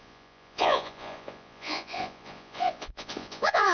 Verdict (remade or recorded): remade